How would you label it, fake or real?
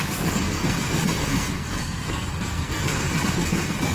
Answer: fake